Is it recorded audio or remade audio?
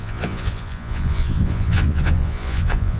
remade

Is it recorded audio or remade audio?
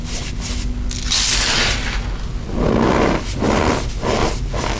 recorded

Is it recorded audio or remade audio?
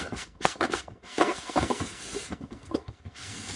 remade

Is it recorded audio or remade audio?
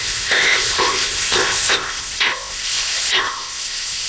remade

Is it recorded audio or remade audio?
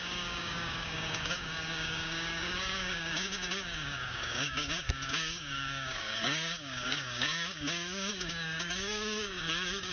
remade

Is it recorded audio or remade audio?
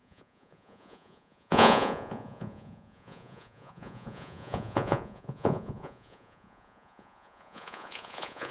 remade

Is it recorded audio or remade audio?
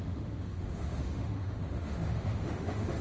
remade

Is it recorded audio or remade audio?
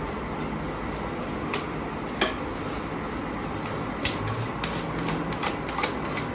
recorded